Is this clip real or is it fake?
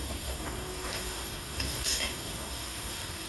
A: fake